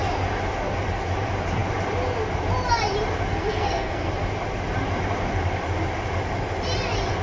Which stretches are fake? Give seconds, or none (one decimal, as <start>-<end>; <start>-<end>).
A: 3.3-4.1